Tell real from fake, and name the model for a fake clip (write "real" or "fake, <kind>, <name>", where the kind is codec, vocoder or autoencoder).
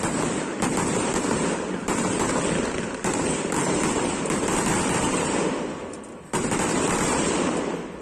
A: fake, vocoder, BigVGAN v2